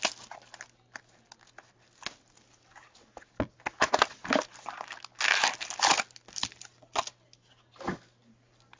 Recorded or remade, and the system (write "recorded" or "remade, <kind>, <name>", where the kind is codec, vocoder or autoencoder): recorded